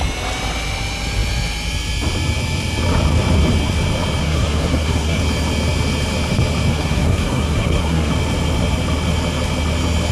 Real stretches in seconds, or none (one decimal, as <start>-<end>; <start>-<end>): 0.0-4.2; 5.2-6.7; 8.1-10.1